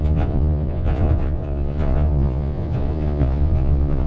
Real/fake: fake